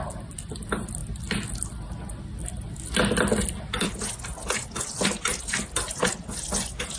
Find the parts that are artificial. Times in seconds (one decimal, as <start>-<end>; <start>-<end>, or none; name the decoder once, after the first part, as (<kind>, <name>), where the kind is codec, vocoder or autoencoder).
none